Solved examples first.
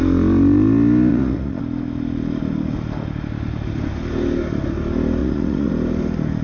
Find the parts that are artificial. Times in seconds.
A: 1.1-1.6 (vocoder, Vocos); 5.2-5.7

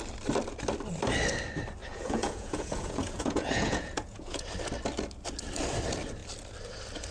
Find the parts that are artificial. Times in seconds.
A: 1.8-4.4 (vocoder, Vocos)

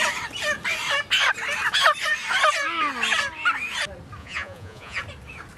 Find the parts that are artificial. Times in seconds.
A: 4.2-5.0 (vocoder, Vocos)